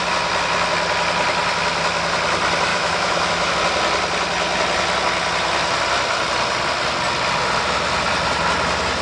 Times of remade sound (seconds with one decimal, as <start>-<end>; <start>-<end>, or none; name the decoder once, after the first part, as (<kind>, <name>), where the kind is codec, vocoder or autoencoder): 2.7-3.5 (autoencoder, DAC-VAE)